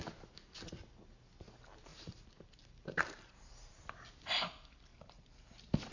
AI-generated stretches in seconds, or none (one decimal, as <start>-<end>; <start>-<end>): 1.9-3.7; 4.9-5.9